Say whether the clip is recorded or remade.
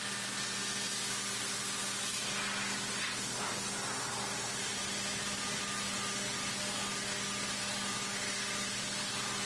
recorded